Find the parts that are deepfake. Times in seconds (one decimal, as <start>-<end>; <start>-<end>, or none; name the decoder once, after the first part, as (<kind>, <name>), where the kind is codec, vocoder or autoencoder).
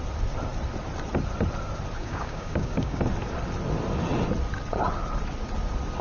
2.0-3.0 (codec, DAC)